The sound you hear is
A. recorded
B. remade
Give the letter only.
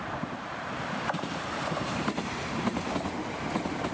B